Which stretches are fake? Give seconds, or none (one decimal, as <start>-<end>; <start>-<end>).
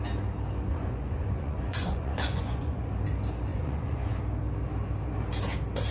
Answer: 0.7-2.9; 3.5-4.2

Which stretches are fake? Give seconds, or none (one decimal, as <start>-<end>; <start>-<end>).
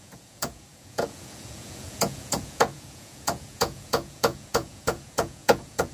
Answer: 0.0-5.9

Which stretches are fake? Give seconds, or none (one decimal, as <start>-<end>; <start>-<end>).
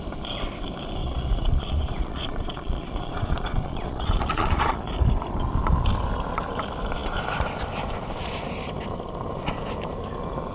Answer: 1.0-4.9